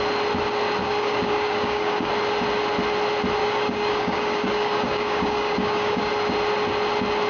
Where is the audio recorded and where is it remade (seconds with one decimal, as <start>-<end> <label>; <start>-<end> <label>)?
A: 0.0-0.8 recorded; 0.8-2.1 remade; 2.1-3.4 recorded; 3.4-6.1 remade; 6.1-7.3 recorded